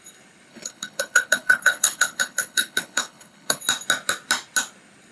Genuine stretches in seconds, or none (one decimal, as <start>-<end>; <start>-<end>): 0.0-0.5; 3.6-5.1